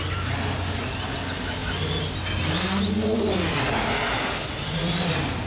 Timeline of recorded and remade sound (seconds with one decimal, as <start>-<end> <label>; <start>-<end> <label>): 0.0-5.5 recorded